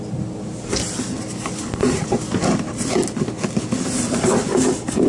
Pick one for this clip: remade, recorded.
recorded